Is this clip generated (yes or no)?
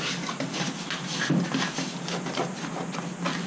no